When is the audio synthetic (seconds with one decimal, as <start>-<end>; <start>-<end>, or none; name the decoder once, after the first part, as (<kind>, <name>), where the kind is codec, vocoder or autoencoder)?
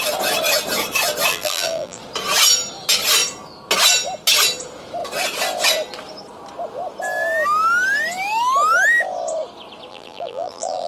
1.3-2.0 (vocoder, BigVGAN v2); 9.9-10.9